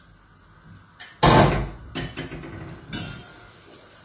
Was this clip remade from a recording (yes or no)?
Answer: no